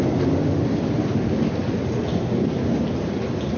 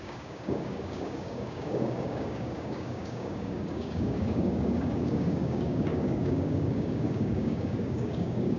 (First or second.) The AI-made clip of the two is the second